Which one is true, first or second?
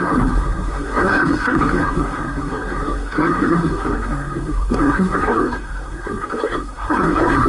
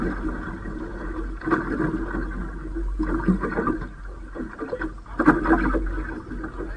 second